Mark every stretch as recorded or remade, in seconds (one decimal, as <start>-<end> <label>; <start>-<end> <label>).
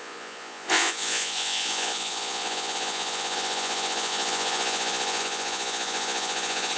0.0-6.8 remade